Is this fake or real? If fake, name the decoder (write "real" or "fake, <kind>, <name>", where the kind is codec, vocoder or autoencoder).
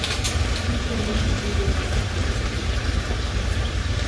fake, vocoder, BigVGAN v2